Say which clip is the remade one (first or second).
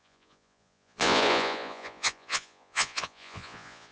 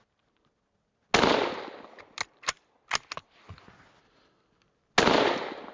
first